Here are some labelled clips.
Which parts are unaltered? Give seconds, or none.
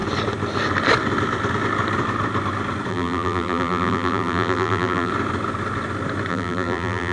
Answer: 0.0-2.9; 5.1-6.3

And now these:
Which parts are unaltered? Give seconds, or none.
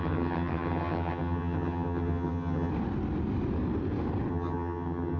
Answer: 2.7-4.3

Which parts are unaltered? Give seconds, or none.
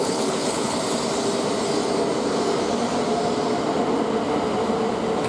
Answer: 0.8-5.3